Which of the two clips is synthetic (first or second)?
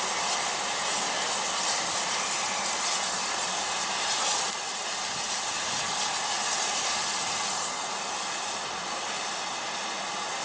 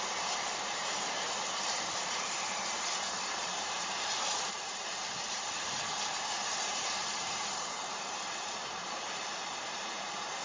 second